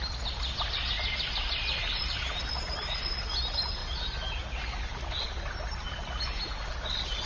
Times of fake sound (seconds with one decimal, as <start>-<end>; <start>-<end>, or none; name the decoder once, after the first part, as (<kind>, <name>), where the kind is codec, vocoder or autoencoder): none